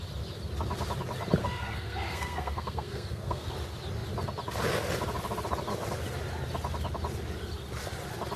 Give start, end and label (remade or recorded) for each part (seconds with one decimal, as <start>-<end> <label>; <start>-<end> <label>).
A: 0.0-1.4 recorded; 1.4-3.5 remade; 3.5-8.4 recorded